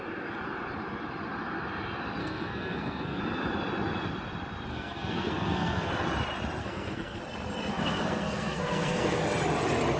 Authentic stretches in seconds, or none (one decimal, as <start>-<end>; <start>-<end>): 0.0-2.2; 3.2-4.7; 5.9-6.6; 7.2-7.7; 9.2-10.0